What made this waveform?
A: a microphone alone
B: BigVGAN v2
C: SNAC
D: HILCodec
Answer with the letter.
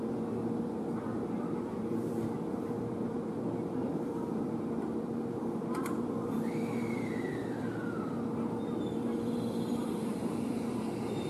B